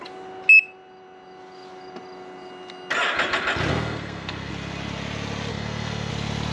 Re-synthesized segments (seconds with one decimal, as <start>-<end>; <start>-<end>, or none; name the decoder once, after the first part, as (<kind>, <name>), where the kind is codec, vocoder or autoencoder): 3.7-4.5 (codec, SNAC); 5.5-6.1